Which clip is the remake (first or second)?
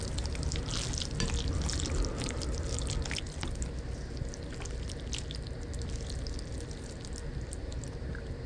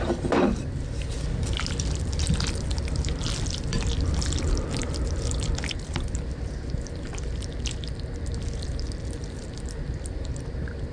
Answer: second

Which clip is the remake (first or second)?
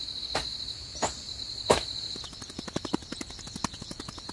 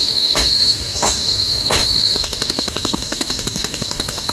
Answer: second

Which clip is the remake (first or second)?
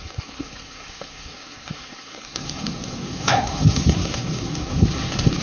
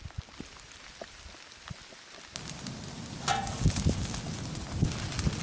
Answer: first